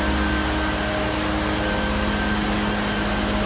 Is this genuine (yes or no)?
yes